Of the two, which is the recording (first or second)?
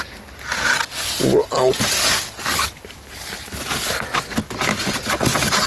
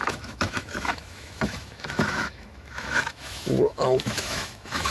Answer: first